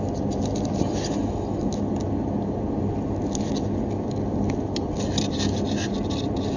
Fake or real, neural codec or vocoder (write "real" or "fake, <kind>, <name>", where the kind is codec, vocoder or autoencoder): real